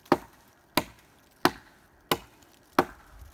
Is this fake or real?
real